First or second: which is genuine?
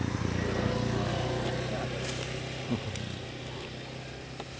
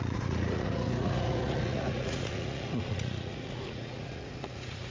first